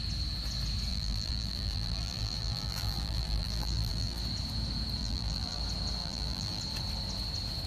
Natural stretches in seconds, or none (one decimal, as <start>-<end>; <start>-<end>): 0.0-0.9; 4.2-5.0; 5.6-6.0; 6.6-7.7

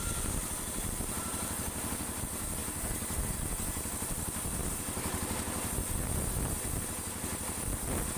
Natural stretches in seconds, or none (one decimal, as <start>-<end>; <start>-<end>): 0.0-0.4; 2.2-8.2

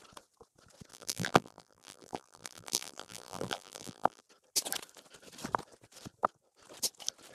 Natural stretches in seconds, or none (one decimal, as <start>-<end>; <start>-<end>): 0.0-0.9; 4.2-7.3

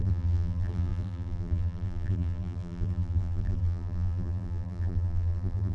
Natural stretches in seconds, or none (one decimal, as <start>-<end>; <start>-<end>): none